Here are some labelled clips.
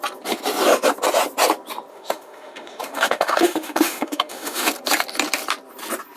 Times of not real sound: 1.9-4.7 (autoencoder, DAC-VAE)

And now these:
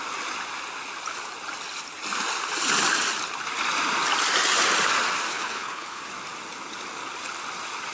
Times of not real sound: 5.3-6.0 (codec, HILCodec)

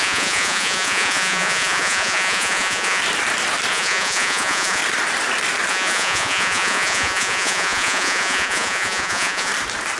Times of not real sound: 0.0-3.0 (vocoder, Vocos); 3.7-4.8; 5.7-9.5

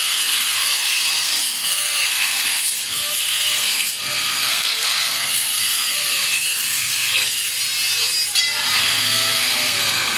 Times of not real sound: 0.0-7.5 (codec, SNAC); 8.8-10.2

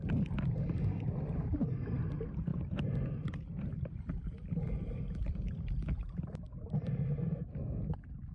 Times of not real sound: none

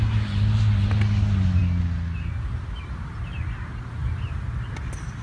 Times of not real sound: none

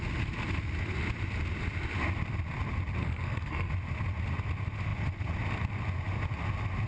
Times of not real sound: 3.0-3.7 (codec, SNAC)